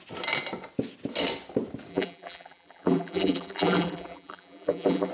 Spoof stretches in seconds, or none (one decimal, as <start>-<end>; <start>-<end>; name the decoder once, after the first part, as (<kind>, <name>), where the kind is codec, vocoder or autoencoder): 1.9-5.1 (vocoder, BigVGAN v2)